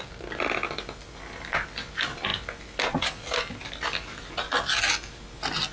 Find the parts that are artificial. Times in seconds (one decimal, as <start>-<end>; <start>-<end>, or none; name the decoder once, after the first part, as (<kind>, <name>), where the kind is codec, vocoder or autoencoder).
none